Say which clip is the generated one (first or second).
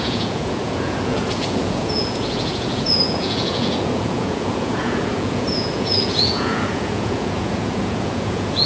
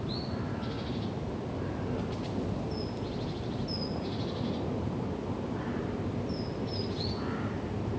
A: first